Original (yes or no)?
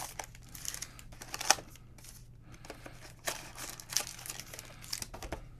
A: yes